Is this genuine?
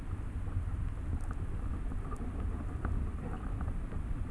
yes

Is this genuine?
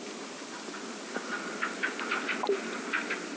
yes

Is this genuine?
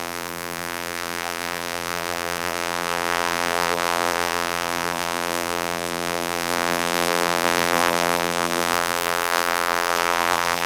no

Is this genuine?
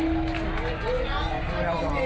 yes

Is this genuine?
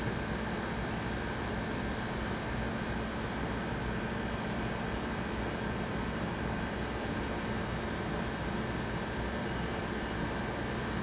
no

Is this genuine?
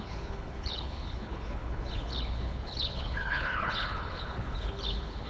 no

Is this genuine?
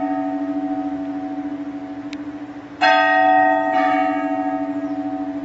yes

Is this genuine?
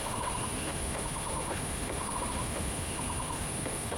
no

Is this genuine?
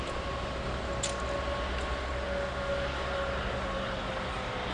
yes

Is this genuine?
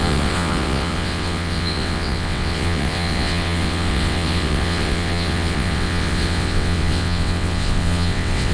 no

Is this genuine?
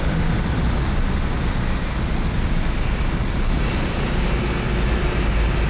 yes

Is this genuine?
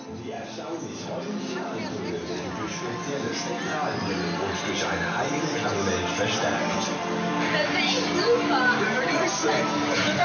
yes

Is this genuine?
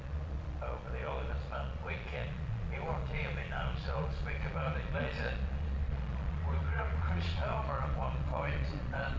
no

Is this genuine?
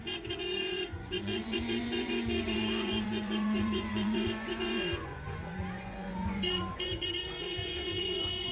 no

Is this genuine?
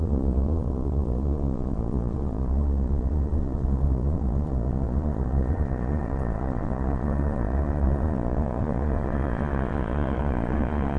no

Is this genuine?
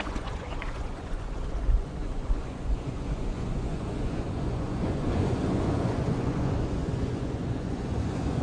no